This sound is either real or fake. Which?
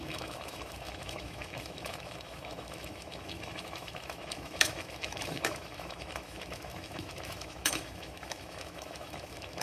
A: fake